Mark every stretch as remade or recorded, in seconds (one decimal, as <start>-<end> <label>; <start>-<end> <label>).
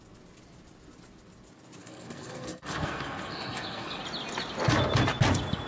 0.0-1.8 recorded; 1.8-4.0 remade; 4.0-5.7 recorded